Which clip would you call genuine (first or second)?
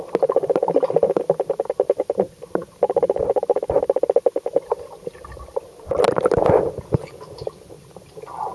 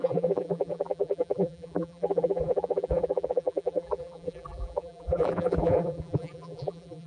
first